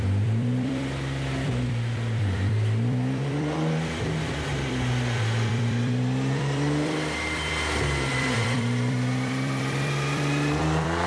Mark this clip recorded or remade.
remade